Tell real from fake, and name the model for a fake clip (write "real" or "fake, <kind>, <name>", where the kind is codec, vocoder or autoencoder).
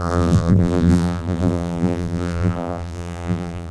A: fake, vocoder, BigVGAN v2